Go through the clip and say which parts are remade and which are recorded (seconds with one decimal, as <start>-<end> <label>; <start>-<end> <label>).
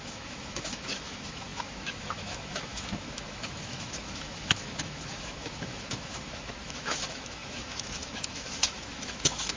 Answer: 0.0-9.6 remade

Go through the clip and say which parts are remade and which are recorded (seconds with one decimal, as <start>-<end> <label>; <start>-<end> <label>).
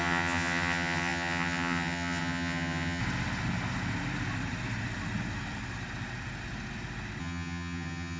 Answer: 0.0-3.0 remade; 3.0-7.2 recorded; 7.2-8.2 remade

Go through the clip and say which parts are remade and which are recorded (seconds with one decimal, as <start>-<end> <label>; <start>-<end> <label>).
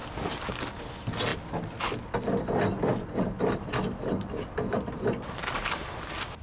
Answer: 0.0-6.4 recorded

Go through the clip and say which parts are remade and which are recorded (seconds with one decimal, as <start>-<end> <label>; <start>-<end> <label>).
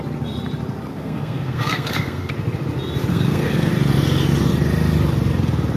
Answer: 0.0-0.9 recorded; 0.9-2.3 remade; 2.3-3.1 recorded; 3.1-3.7 remade; 3.7-5.8 recorded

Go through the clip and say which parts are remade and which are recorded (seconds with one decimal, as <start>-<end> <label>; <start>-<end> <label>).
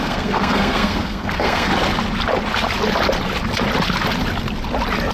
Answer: 0.0-1.7 remade; 1.7-5.1 recorded